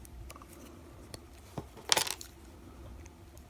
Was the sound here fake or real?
real